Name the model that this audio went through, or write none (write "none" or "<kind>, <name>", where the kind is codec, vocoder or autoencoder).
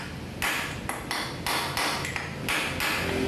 none